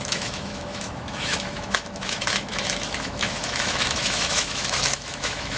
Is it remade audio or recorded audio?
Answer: remade